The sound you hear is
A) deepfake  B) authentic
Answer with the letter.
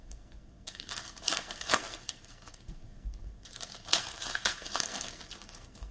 A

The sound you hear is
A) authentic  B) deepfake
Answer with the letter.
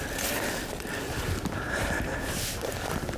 A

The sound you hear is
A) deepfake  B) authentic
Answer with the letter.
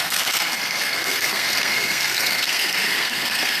A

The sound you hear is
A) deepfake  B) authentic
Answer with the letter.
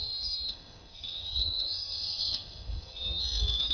A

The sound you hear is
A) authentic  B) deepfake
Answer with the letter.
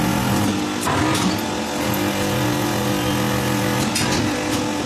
A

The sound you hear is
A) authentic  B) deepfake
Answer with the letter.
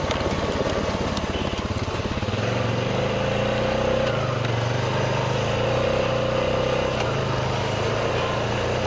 A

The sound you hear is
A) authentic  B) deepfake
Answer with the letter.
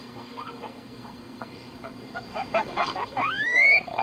B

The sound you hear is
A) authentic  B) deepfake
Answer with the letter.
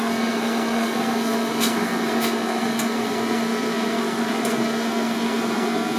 B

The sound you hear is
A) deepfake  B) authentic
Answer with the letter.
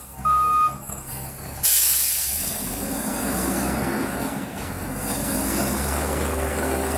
A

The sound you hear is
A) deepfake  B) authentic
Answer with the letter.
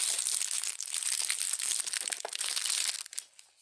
B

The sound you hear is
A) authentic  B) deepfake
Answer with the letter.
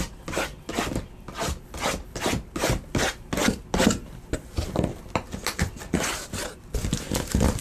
A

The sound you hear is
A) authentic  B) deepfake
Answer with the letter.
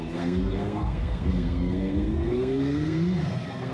B